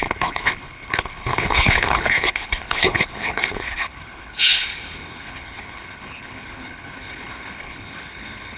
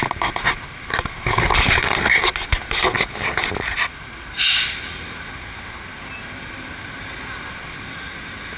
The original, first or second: second